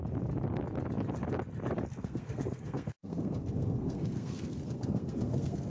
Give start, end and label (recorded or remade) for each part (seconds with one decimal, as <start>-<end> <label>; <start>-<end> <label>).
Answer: 0.0-2.0 recorded; 2.0-5.7 remade

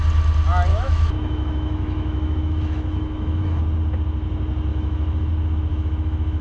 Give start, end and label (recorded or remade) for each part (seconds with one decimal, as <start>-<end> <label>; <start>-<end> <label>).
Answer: 0.0-0.7 recorded; 0.7-3.6 remade; 3.6-4.7 recorded; 4.7-5.3 remade; 5.3-5.7 recorded; 5.7-6.4 remade

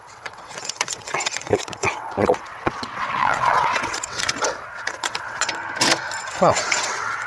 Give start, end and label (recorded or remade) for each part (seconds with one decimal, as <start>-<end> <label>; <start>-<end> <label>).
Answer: 0.0-5.5 remade; 5.5-6.2 recorded; 6.2-7.3 remade

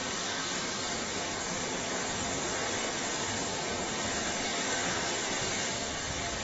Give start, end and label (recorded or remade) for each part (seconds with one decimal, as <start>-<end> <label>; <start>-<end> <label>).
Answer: 0.0-2.2 remade; 2.2-4.3 recorded; 4.3-4.9 remade; 4.9-6.4 recorded

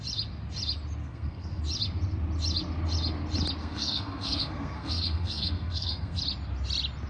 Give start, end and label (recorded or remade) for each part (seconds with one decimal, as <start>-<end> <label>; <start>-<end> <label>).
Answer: 0.0-1.0 recorded; 1.0-1.6 remade; 1.6-3.6 recorded; 3.6-6.2 remade; 6.2-7.1 recorded

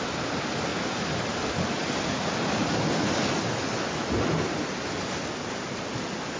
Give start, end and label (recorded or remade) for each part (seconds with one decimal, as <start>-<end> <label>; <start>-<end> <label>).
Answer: 0.0-6.4 recorded